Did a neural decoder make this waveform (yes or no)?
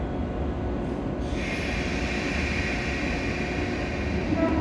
no